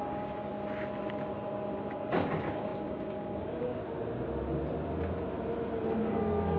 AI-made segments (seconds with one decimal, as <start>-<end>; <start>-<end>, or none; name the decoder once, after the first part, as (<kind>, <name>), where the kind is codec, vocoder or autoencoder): 0.0-0.5 (codec, DAC); 1.9-3.8; 6.0-6.6